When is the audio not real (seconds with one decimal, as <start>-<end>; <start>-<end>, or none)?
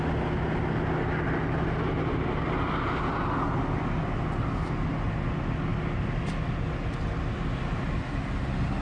none